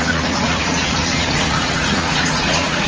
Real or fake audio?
fake